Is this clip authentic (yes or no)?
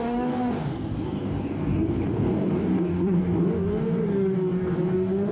no